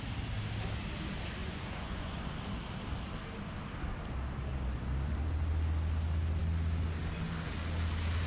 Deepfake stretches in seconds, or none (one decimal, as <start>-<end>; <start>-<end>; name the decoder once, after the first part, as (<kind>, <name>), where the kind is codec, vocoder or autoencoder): 1.4-2.2 (vocoder, Vocos)